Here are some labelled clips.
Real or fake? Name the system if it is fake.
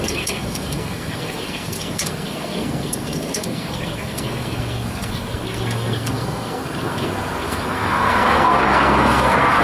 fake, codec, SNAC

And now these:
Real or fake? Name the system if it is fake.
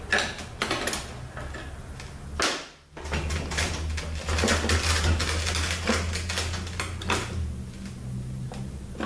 real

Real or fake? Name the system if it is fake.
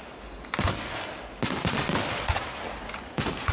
real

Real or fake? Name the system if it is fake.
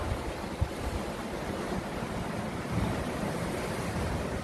real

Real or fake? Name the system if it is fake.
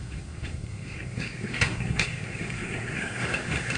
fake, codec, SNAC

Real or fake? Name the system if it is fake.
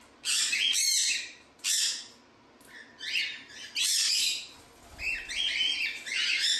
real